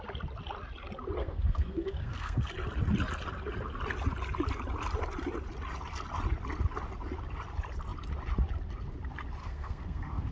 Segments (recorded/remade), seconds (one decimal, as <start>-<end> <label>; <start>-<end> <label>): 0.0-1.2 recorded; 1.2-2.5 remade; 2.5-9.4 recorded; 9.4-10.3 remade